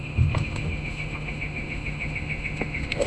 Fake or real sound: fake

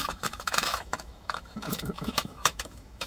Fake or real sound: fake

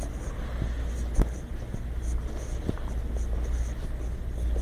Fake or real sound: real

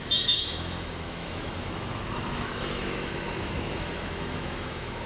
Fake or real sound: fake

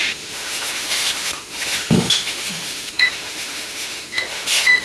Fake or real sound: fake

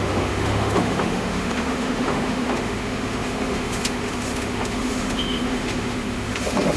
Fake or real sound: fake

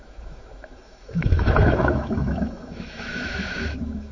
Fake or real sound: fake